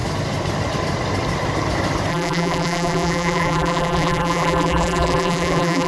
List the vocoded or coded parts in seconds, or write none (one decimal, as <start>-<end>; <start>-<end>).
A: 2.1-5.9